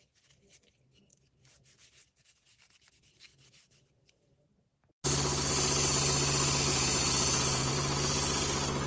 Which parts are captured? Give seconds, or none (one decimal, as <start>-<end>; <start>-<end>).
0.0-6.7; 7.7-8.9